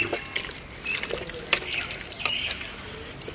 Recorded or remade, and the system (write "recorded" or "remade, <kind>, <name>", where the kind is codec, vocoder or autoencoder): recorded